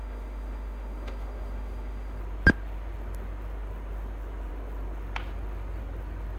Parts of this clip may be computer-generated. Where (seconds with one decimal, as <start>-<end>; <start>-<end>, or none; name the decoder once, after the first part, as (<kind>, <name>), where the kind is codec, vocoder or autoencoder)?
0.0-2.2 (autoencoder, DAC-VAE)